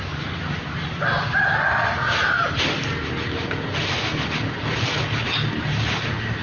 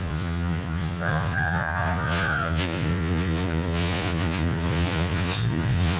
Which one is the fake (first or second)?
second